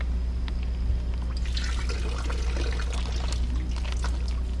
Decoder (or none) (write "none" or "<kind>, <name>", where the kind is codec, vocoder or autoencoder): none